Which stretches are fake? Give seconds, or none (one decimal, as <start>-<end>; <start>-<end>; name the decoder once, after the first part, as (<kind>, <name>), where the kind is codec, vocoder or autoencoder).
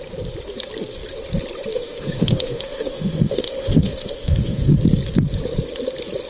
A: 1.7-4.7 (autoencoder, DAC-VAE)